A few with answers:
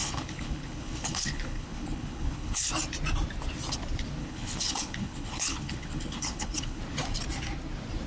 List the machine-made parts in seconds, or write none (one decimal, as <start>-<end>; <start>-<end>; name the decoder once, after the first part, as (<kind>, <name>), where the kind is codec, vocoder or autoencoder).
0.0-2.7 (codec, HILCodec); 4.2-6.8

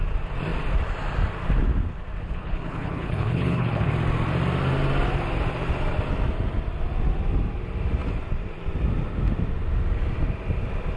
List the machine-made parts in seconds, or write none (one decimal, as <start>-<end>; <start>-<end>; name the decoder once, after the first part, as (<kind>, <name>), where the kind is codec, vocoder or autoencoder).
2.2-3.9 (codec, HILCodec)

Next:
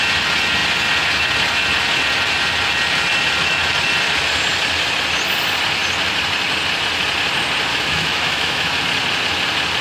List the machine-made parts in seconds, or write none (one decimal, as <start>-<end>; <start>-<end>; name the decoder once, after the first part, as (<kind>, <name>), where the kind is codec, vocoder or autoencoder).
7.7-8.8 (autoencoder, DAC-VAE)

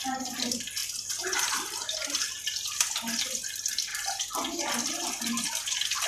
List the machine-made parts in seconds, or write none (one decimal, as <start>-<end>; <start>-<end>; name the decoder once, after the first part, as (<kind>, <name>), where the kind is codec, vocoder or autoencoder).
0.8-2.9 (vocoder, BigVGAN v2); 3.9-5.3

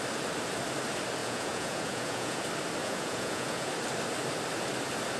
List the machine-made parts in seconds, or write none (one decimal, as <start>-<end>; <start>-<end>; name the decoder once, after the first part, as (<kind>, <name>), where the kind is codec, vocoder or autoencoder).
1.2-2.4 (vocoder, Vocos); 2.8-3.7

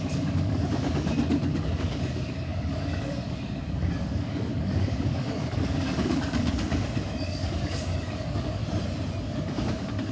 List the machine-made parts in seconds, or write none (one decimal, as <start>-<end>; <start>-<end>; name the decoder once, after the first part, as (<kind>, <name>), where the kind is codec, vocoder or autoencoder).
0.0-8.6 (codec, DAC); 9.2-10.1

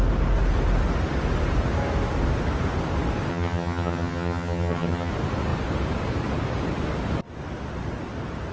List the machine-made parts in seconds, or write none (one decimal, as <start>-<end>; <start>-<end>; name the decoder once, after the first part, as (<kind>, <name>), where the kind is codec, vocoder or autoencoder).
3.3-5.1 (vocoder, HiFi-GAN)